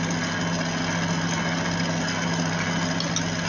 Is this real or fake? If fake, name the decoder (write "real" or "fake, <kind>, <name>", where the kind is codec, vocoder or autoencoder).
real